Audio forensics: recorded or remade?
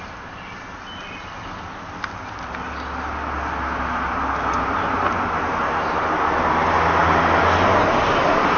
recorded